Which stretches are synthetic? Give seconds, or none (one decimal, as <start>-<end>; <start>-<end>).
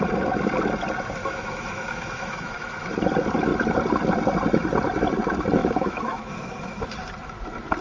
1.2-2.9; 5.6-6.8